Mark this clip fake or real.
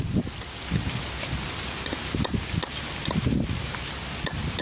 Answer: real